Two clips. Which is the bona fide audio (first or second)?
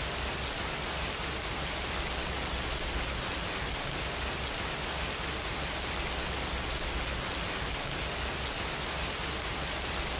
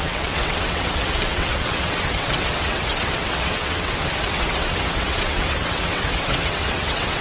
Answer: first